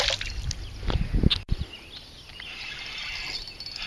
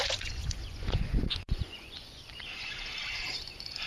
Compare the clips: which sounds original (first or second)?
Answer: first